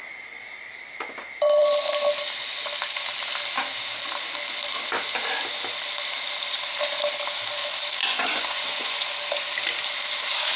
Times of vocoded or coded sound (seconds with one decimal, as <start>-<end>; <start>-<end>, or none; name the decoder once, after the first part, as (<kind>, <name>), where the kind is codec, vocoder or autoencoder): 8.0-9.1 (vocoder, Vocos)